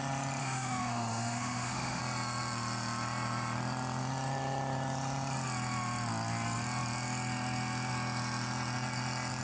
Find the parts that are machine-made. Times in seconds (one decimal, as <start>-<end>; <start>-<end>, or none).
0.4-2.0